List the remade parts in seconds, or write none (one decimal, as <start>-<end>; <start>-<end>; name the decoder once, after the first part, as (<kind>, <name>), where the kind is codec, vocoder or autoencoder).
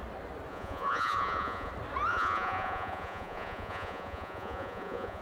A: 0.5-1.7 (vocoder, Vocos); 2.1-5.2